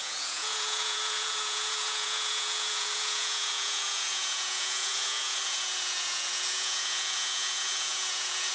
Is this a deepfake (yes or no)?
yes